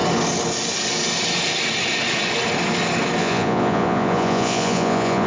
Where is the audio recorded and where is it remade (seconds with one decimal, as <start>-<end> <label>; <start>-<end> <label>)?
0.0-3.2 recorded; 3.2-5.3 remade